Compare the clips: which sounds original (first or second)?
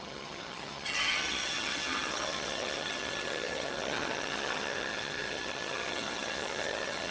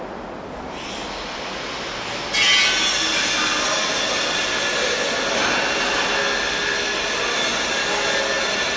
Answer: second